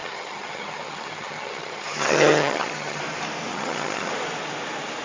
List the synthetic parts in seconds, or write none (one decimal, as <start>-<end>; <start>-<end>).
0.0-3.0; 3.5-4.1